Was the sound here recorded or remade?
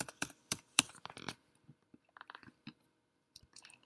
remade